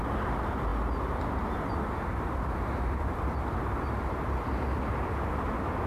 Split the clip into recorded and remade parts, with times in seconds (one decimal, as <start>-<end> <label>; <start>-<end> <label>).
0.0-5.9 recorded